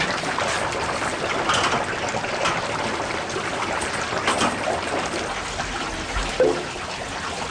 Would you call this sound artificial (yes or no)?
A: no